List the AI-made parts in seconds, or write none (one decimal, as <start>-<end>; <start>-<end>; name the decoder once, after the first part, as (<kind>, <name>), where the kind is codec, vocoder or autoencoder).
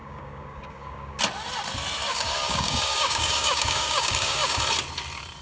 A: 0.0-1.2 (codec, DAC); 2.1-4.6